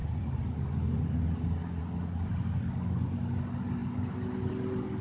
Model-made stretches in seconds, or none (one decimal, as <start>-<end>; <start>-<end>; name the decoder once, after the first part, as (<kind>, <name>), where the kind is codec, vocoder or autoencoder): none